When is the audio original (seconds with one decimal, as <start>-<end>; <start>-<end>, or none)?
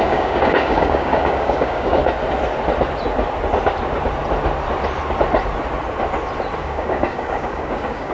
2.0-6.6